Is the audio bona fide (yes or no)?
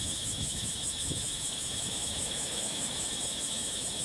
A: no